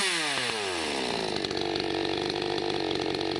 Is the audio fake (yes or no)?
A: no